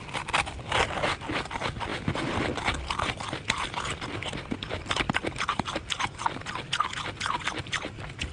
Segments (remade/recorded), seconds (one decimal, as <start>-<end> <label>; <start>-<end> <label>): 0.0-8.3 recorded